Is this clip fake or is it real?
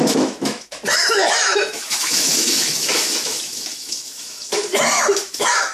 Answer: fake